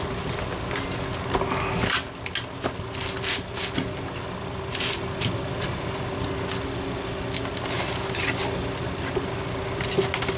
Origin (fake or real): real